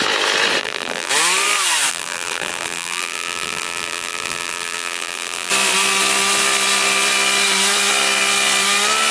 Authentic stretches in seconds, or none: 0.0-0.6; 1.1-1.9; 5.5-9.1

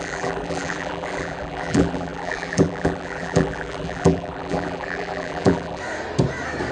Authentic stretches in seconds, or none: 5.8-6.7

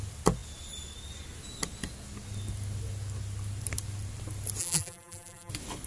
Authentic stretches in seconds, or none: 0.0-4.6; 5.5-5.9

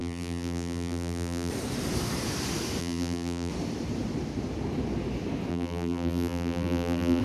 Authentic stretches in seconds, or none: 1.5-2.8; 3.5-5.5

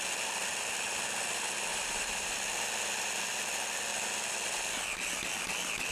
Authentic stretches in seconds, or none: 0.0-1.7; 2.3-5.9

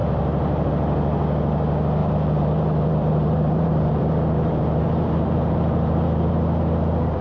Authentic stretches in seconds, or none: 0.7-2.0; 6.3-7.2